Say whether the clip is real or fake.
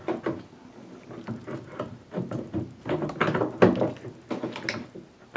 real